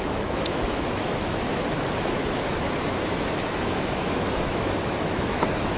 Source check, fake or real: fake